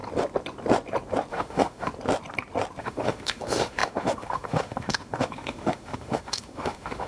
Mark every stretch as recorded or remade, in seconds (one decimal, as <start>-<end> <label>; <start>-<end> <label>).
0.0-1.3 recorded; 1.3-1.9 remade; 1.9-2.8 recorded; 2.8-7.1 remade